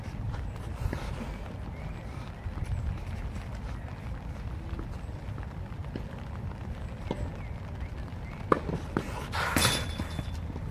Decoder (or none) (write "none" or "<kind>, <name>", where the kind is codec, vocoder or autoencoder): none